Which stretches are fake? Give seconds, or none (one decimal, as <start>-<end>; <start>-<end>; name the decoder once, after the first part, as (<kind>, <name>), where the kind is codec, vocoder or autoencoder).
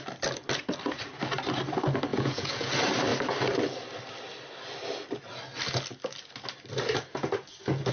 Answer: 2.1-2.7 (vocoder, Vocos)